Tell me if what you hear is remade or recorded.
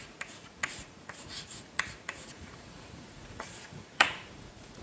remade